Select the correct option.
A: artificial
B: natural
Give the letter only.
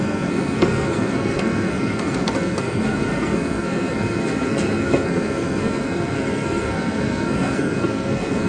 A